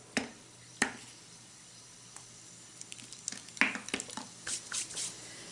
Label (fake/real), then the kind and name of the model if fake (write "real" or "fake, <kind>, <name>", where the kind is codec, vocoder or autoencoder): real